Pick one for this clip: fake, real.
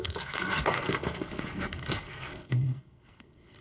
fake